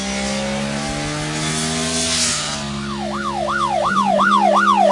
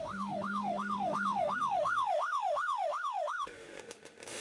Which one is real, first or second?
first